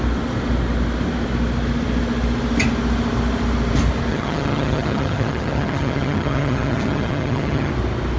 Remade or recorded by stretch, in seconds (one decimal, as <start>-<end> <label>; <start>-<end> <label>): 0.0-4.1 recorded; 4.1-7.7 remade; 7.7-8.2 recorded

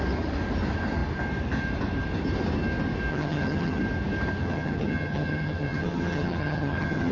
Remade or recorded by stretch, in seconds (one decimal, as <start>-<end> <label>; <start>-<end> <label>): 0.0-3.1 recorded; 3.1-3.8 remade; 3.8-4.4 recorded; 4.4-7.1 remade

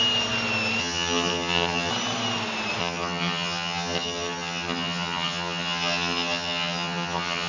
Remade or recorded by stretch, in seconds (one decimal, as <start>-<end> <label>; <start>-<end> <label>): 0.0-0.8 recorded; 0.8-1.9 remade; 1.9-2.8 recorded; 2.8-7.5 remade